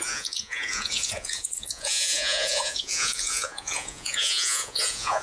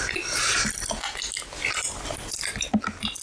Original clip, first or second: second